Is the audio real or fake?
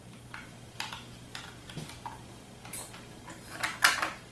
real